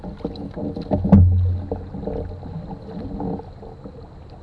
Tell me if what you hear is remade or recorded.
recorded